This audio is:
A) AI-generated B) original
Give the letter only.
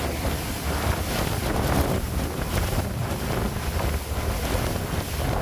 B